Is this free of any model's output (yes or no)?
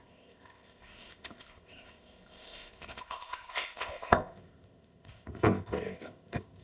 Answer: no